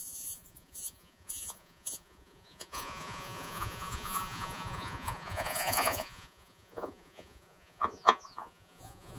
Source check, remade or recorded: remade